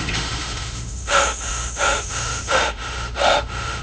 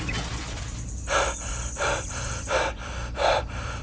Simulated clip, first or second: first